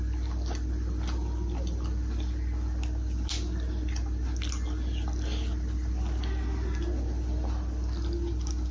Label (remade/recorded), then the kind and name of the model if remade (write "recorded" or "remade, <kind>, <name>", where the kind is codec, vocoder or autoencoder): recorded